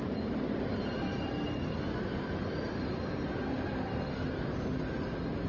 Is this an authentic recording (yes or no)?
yes